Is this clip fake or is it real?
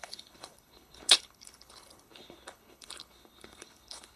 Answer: fake